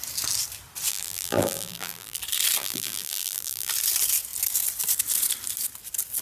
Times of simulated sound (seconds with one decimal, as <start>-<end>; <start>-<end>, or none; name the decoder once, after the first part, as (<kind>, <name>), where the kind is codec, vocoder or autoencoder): 0.9-2.2 (vocoder, BigVGAN v2); 2.6-3.7